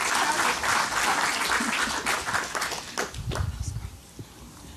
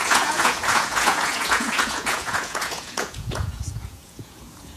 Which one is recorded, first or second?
first